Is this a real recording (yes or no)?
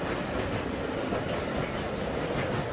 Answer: yes